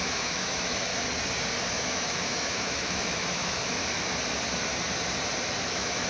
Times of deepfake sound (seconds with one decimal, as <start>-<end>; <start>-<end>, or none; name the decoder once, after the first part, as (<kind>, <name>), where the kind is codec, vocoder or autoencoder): 0.0-0.9 (autoencoder, DAC-VAE); 1.7-3.8; 5.6-6.1